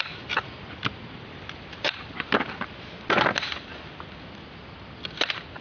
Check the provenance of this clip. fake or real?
real